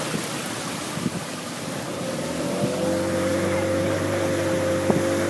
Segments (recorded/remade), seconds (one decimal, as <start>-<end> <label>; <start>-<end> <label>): 0.0-0.4 recorded; 0.4-1.3 remade; 1.3-3.3 recorded; 3.3-4.7 remade; 4.7-5.3 recorded